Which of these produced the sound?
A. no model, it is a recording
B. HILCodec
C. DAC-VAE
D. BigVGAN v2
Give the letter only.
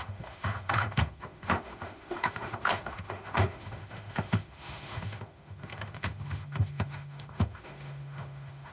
C